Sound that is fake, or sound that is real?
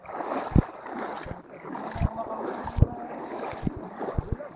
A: real